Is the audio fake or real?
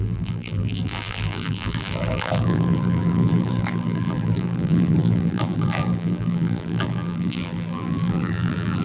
fake